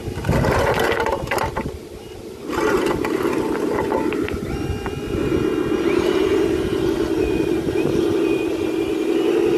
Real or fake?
real